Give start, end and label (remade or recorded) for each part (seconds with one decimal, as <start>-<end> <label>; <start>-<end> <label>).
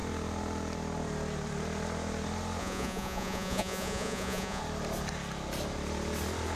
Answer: 0.0-2.6 recorded; 2.6-4.6 remade; 4.6-6.5 recorded